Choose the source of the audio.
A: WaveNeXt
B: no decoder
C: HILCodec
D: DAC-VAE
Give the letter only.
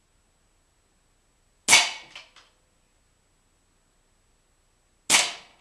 B